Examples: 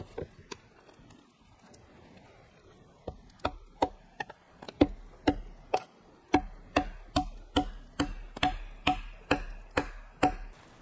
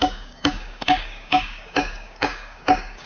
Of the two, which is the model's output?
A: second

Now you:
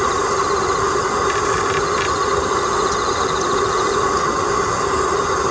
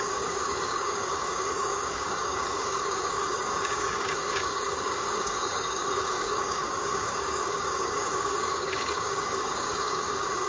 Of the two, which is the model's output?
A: second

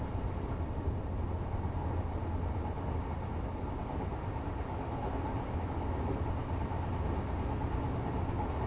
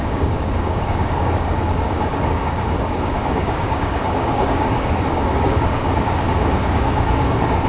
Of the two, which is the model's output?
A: second